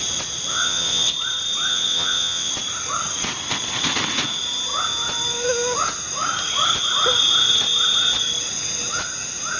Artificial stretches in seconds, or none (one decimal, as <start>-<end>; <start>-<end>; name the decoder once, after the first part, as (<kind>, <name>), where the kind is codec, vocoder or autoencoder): 0.5-1.1 (vocoder, WaveNeXt); 1.7-2.5